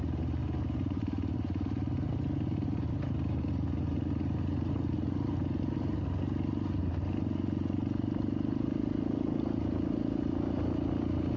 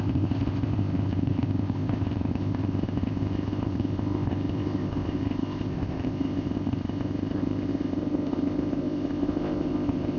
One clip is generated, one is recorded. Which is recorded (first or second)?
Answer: first